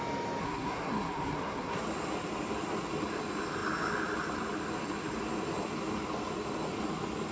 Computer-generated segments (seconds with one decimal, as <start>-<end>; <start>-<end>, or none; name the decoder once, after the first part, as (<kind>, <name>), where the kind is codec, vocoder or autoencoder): 0.4-1.8 (codec, SNAC)

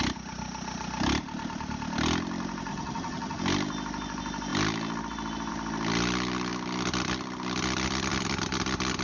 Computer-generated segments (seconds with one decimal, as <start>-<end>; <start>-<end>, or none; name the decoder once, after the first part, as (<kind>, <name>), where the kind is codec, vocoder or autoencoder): 2.7-3.4 (vocoder, HiFi-GAN)

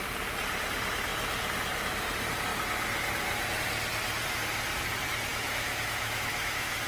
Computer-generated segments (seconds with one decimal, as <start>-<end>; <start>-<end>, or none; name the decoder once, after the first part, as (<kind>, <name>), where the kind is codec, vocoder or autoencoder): 5.3-6.9 (autoencoder, DAC-VAE)

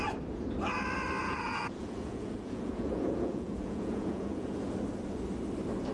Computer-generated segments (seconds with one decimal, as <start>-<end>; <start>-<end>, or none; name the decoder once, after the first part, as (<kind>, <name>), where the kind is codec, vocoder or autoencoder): 1.2-4.7 (vocoder, Vocos)

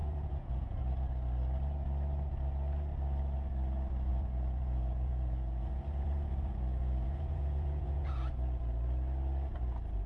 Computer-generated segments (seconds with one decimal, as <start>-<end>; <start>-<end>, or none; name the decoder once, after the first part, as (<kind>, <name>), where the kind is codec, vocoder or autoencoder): 0.0-0.8 (vocoder, Vocos); 4.1-8.3

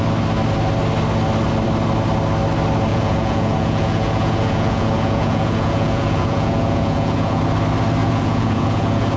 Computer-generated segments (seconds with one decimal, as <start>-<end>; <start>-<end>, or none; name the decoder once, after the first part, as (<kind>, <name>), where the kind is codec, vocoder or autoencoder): 2.9-7.4 (vocoder, Vocos); 8.0-9.2

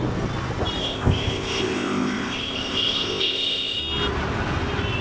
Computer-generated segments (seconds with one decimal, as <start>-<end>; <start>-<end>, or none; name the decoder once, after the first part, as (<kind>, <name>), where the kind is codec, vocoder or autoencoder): 0.8-3.8 (codec, ZipCodec)